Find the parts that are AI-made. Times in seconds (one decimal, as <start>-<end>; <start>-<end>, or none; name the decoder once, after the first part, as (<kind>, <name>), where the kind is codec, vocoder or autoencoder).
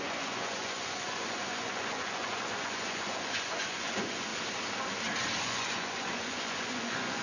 0.0-4.3 (vocoder, Vocos); 5.4-7.2